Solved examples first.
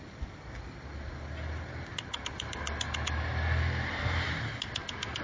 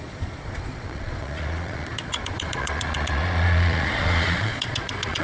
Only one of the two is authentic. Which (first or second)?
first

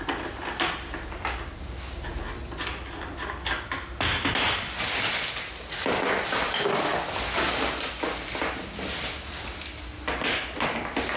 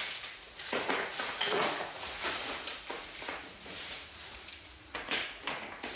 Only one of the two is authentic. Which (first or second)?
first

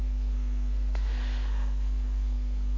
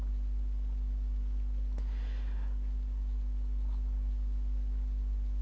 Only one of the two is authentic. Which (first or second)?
second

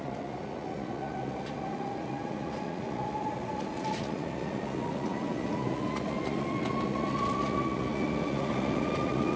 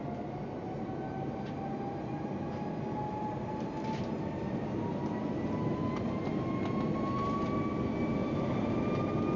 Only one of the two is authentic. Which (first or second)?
second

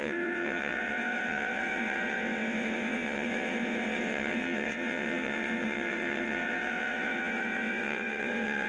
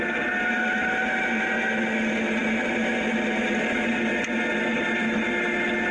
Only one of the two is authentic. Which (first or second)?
second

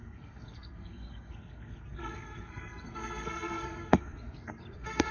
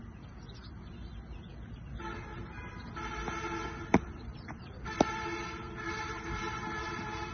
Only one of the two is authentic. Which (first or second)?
second